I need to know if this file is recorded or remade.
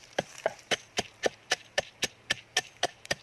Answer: remade